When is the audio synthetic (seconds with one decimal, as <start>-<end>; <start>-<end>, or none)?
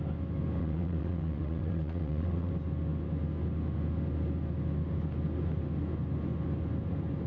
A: 0.6-2.5